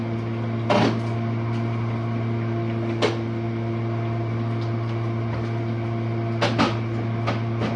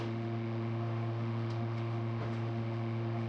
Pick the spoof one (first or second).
second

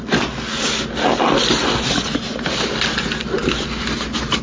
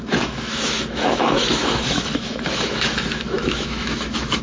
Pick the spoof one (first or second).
second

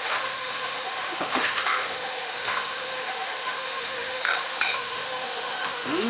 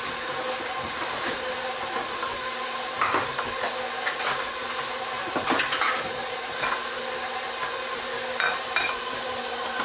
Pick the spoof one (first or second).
first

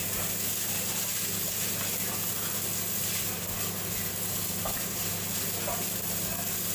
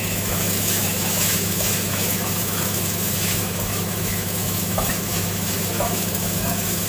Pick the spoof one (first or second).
second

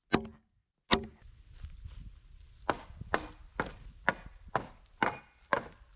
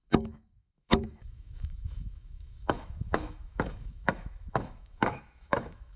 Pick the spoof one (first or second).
second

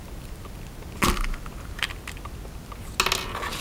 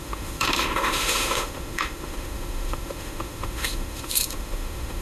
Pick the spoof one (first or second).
second